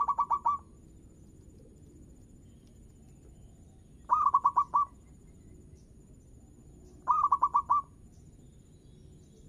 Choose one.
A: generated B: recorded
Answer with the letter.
B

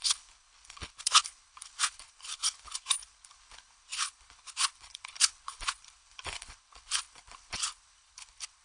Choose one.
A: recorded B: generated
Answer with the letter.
B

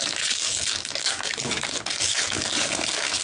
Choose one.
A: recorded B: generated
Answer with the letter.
B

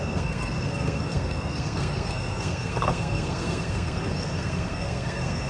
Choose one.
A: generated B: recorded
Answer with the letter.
A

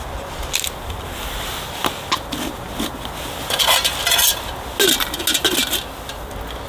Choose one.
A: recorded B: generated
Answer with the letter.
A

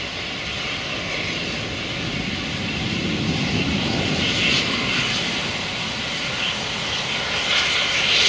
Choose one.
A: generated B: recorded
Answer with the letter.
B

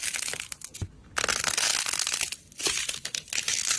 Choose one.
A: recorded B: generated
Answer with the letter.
A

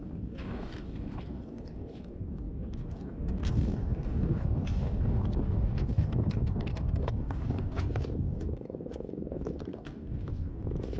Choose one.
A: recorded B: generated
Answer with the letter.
B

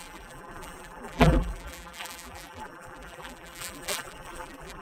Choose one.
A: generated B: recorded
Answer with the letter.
A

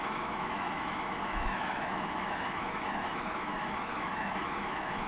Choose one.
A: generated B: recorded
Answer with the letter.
A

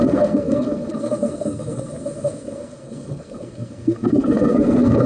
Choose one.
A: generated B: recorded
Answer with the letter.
A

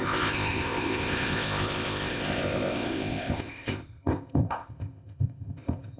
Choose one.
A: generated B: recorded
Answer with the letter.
A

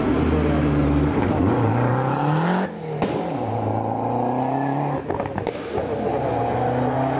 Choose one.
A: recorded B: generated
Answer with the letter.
A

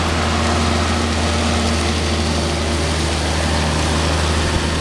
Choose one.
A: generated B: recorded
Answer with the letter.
B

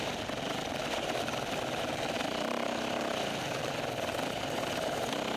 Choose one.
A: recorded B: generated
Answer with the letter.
A